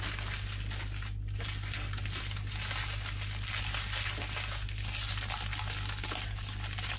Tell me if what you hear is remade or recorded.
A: recorded